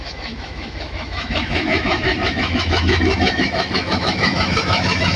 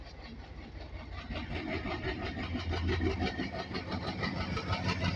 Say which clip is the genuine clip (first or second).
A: second